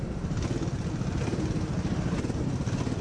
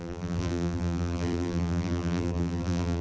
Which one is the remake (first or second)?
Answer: second